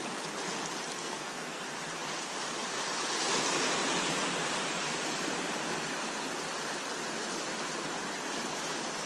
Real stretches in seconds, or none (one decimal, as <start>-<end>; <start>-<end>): 0.0-1.0; 1.6-9.1